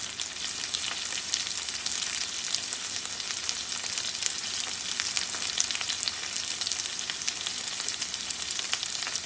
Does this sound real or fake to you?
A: real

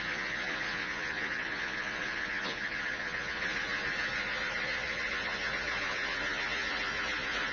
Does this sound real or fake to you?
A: fake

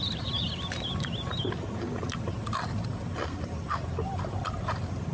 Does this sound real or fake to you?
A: real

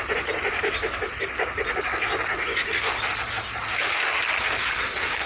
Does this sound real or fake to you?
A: real